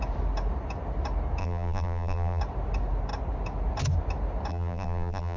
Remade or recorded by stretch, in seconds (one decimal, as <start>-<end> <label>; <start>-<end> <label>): 0.0-1.4 recorded; 1.4-2.4 remade; 2.4-4.5 recorded; 4.5-5.4 remade